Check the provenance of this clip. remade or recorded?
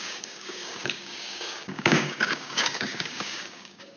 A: remade